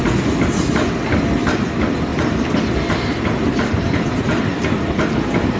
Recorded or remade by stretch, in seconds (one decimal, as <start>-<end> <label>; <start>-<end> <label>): 0.0-2.1 recorded; 2.1-5.6 remade